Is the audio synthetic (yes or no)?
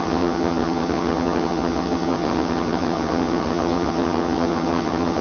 yes